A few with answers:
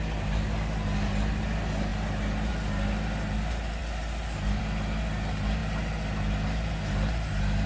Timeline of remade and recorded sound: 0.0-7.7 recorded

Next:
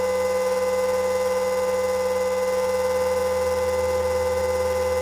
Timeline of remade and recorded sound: 0.0-5.0 recorded

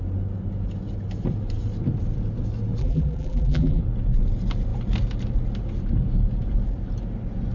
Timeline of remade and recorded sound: 0.0-2.8 recorded; 2.8-3.8 remade; 3.8-7.5 recorded

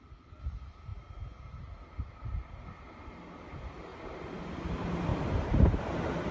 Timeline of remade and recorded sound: 0.0-3.9 recorded; 3.9-4.6 remade; 4.6-5.1 recorded; 5.1-5.8 remade; 5.8-6.3 recorded

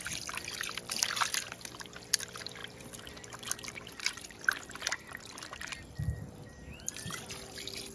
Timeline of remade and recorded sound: 0.0-2.6 recorded; 2.6-7.3 remade; 7.3-7.9 recorded

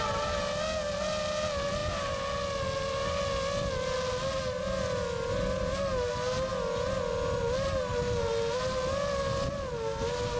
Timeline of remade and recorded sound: 0.0-10.4 recorded

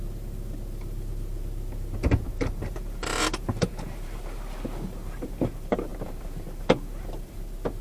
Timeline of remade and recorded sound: 0.0-7.8 remade

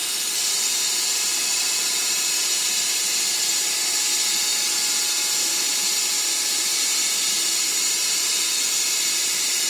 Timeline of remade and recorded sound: 0.0-0.8 remade; 0.8-1.3 recorded; 1.3-4.0 remade; 4.0-9.7 recorded